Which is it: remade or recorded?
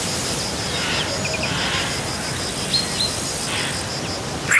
recorded